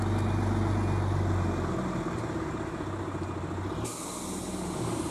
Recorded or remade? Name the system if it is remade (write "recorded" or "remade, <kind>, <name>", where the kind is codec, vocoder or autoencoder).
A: recorded